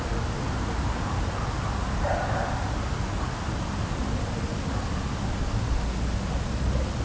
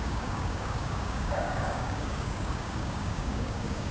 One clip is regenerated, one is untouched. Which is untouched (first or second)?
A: first